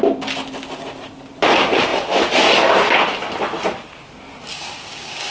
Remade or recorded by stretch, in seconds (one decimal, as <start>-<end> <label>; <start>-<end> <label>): 0.0-4.5 recorded; 4.5-5.3 remade